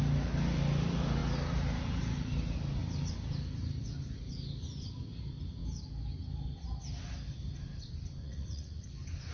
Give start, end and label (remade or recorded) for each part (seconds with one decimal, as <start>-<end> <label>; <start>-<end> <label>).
0.0-8.2 recorded; 8.2-8.9 remade; 8.9-9.3 recorded